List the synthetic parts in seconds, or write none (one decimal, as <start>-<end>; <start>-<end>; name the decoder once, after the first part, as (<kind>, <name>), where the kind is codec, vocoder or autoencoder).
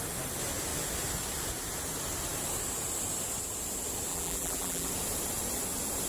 4.1-4.9 (vocoder, BigVGAN v2)